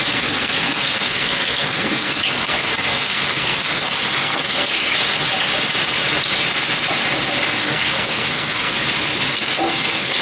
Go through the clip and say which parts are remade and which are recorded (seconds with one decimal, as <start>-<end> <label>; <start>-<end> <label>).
0.0-4.9 remade; 4.9-7.6 recorded; 7.6-8.8 remade; 8.8-9.3 recorded; 9.3-10.2 remade